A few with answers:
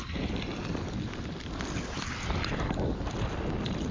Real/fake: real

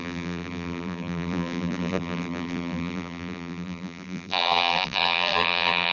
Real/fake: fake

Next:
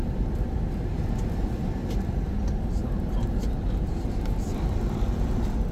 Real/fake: real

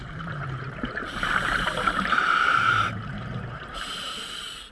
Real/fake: fake